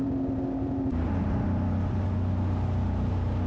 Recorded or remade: recorded